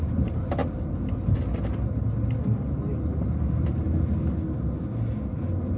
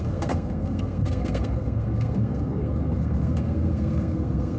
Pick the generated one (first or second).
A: second